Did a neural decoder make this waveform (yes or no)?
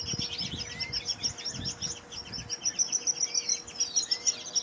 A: no